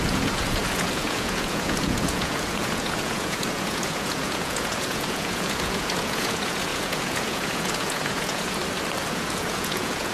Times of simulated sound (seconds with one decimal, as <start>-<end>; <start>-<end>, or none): 0.0-8.6; 9.1-10.1